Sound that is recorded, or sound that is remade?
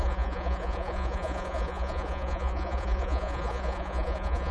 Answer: remade